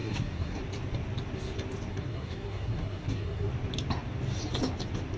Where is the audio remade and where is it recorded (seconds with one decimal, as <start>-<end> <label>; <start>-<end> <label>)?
0.0-0.6 remade; 0.6-1.9 recorded; 1.9-3.5 remade; 3.5-5.2 recorded